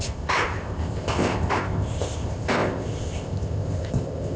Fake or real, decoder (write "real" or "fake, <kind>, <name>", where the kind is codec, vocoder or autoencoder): fake, codec, ZipCodec